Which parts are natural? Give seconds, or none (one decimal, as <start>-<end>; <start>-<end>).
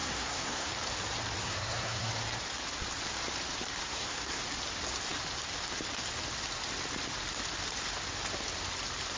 0.7-1.4; 2.1-3.8; 4.4-9.2